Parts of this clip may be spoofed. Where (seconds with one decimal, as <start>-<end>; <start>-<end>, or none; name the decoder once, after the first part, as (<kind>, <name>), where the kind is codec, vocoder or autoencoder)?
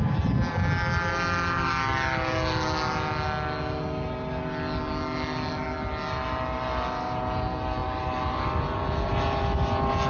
none